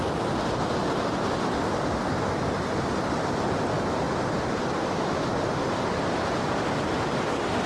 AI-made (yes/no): no